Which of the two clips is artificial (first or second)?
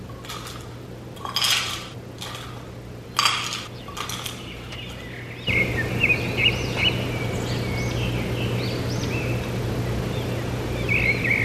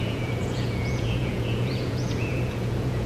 second